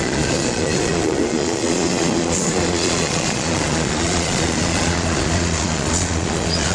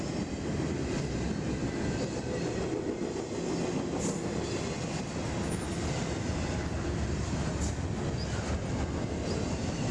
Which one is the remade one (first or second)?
first